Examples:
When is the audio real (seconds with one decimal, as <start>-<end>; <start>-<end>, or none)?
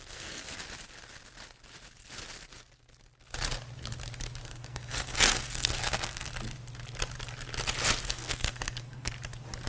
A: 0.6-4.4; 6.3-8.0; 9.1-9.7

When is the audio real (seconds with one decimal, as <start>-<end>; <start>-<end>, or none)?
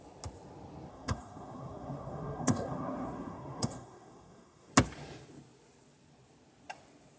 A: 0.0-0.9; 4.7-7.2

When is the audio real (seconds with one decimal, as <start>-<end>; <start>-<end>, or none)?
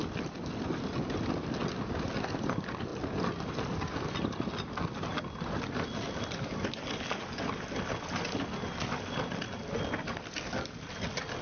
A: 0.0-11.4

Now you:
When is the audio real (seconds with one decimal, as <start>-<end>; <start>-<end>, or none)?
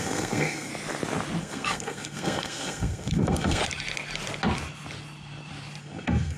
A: 0.7-1.4; 3.6-5.8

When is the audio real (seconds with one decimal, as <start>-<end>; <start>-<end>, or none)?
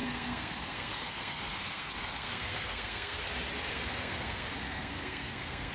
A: 3.2-3.7